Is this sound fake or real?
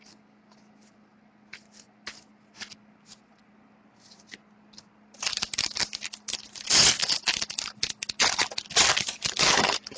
real